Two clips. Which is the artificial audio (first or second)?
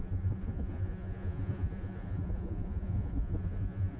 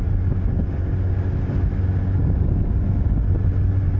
first